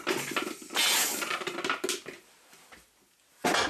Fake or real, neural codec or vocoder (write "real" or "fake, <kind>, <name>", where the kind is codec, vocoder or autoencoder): real